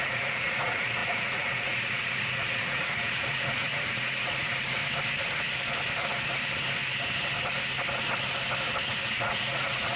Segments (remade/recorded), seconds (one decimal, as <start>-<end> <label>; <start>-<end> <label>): 0.0-4.8 remade; 4.8-9.1 recorded; 9.1-10.0 remade